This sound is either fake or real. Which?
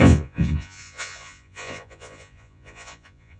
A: fake